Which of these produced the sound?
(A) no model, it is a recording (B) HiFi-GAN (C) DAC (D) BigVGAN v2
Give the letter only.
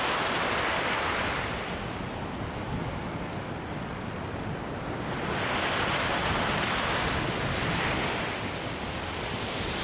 A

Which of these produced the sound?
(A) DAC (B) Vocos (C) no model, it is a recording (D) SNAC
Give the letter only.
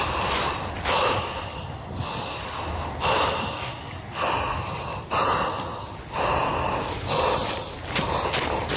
C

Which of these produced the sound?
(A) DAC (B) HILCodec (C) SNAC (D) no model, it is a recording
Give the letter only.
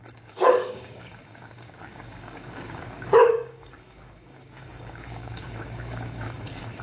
A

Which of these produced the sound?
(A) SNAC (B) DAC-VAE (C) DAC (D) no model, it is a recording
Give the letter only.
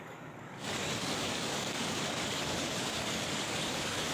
C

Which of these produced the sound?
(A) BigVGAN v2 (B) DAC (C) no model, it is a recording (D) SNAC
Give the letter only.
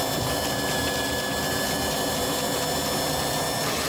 C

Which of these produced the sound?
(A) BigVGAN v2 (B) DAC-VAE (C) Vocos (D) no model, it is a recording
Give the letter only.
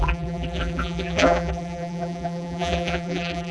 A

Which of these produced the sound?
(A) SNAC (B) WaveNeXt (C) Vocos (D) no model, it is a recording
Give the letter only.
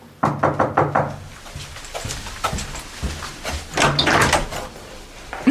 D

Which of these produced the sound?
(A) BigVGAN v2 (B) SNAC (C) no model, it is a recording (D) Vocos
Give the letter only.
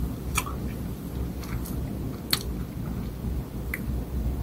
C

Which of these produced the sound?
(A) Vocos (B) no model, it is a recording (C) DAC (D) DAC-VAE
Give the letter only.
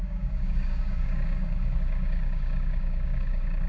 C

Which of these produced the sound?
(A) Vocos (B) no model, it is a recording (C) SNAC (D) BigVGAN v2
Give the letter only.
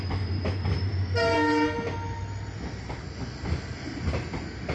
B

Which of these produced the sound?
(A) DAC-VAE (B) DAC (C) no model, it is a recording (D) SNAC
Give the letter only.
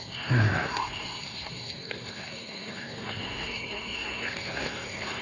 D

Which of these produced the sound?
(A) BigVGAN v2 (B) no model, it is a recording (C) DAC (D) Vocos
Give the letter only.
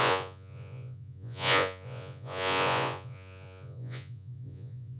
D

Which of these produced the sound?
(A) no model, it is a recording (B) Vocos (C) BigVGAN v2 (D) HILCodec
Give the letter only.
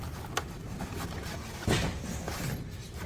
A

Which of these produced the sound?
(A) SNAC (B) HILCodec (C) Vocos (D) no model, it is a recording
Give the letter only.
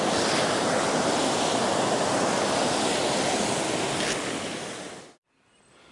D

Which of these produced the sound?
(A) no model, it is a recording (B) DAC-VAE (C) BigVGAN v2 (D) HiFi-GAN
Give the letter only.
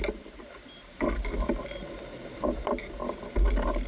A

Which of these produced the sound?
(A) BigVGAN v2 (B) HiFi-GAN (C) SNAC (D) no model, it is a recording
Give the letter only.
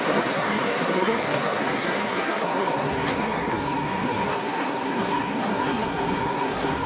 C